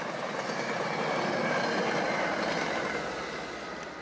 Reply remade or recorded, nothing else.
recorded